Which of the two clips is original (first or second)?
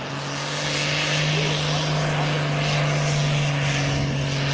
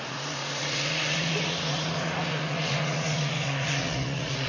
first